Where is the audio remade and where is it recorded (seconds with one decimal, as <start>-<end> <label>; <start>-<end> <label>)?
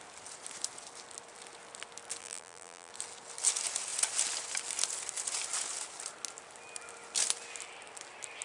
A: 0.0-2.2 recorded; 2.2-2.9 remade; 2.9-8.4 recorded